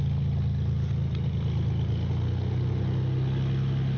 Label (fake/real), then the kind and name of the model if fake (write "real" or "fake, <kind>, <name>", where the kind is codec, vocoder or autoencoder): real